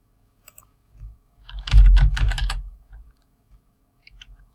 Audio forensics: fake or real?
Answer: fake